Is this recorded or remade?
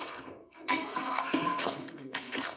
remade